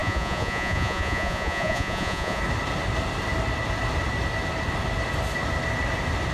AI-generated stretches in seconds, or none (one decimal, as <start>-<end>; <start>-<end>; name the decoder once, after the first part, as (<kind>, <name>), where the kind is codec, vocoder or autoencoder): 0.0-2.4 (vocoder, Vocos)